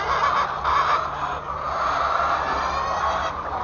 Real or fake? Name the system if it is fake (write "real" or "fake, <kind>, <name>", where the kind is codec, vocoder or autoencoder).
real